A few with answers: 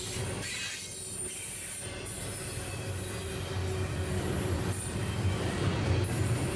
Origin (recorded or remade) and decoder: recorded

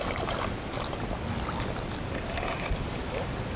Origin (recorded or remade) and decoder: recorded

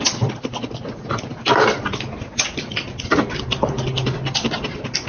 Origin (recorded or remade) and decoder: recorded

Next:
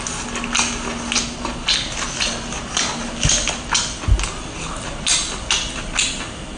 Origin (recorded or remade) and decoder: recorded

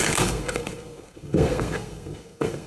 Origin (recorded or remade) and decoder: remade, codec, SNAC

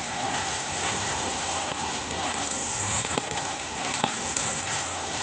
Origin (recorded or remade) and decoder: remade, codec, SNAC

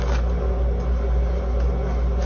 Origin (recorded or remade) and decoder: recorded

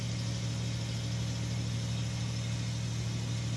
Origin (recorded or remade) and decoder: recorded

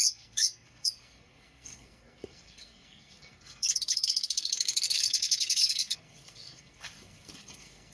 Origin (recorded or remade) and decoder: remade, codec, SNAC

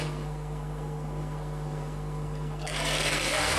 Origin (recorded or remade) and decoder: remade, codec, SNAC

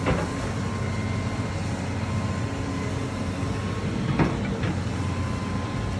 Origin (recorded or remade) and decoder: recorded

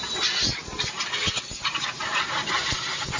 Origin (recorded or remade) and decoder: recorded